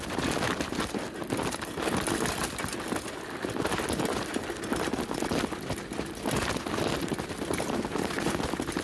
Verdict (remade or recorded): recorded